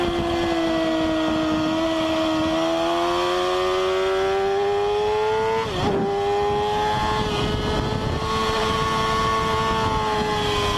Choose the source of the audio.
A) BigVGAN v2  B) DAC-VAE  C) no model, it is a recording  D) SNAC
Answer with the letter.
C